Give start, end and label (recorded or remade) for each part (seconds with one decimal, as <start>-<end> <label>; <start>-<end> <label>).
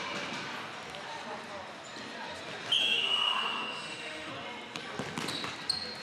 0.0-2.8 recorded; 2.8-4.3 remade; 4.3-6.0 recorded